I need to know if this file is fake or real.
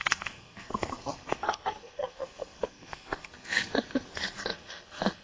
fake